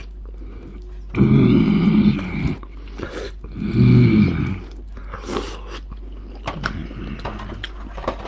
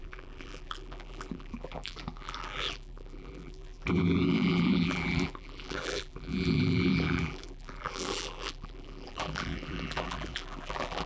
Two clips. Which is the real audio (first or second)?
first